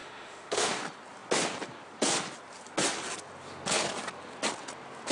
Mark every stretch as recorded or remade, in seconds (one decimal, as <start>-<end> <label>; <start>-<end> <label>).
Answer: 0.0-0.7 remade; 0.7-5.1 recorded